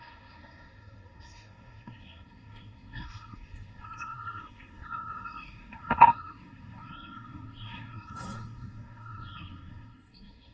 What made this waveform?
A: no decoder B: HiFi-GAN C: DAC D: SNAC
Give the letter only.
D